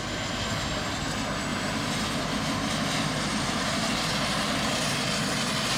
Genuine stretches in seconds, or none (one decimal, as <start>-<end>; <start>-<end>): 0.0-1.5; 4.5-5.8